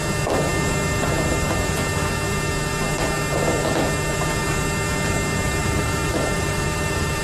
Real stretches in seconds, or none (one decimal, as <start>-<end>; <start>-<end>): 0.0-5.6